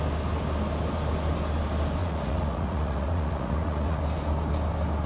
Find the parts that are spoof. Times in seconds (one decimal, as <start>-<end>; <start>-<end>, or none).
2.0-4.0